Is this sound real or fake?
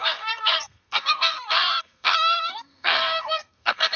fake